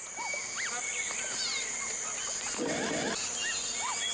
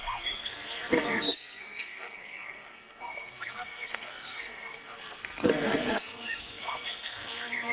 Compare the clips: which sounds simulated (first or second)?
second